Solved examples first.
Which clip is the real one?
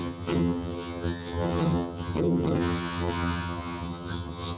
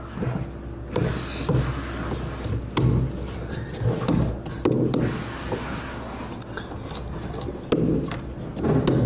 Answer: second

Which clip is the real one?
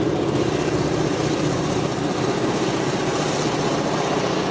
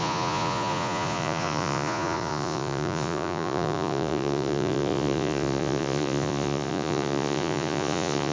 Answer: first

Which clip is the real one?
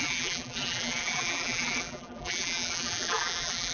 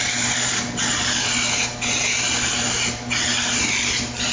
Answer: second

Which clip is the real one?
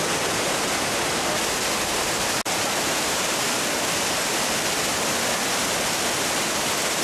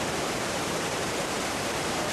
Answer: first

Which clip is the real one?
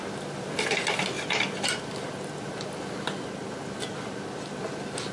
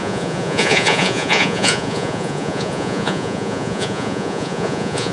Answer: first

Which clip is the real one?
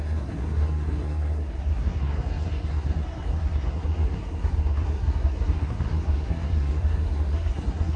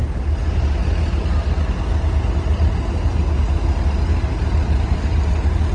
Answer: second